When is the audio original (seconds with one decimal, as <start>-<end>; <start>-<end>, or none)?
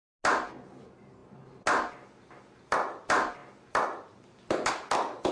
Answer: 0.0-5.3